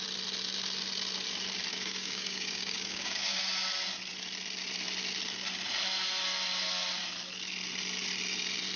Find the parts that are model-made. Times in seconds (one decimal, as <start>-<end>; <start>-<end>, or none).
1.7-3.4